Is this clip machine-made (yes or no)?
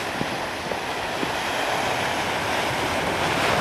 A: no